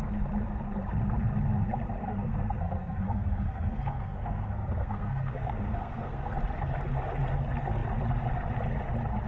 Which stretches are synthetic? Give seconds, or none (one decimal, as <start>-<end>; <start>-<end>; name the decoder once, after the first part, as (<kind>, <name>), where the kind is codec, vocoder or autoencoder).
2.0-6.3 (codec, SNAC)